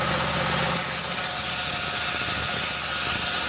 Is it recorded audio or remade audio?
recorded